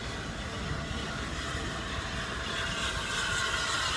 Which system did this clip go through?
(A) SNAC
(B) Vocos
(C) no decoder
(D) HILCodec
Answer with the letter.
C